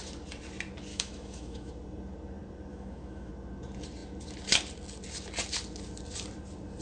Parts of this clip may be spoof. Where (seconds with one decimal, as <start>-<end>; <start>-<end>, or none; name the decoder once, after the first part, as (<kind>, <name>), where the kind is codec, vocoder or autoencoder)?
0.9-1.7 (autoencoder, DAC-VAE); 2.7-3.3